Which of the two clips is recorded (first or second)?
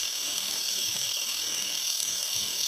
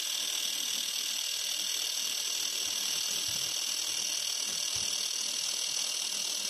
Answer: second